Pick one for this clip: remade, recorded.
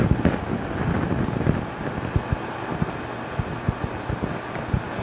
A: recorded